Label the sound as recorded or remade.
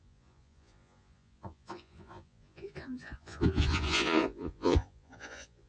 remade